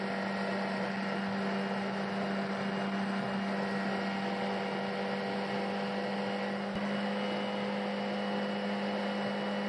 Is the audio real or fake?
real